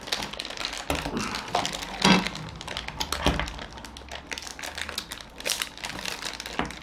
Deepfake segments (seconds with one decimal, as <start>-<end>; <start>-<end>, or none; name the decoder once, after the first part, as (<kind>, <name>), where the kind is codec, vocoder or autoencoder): none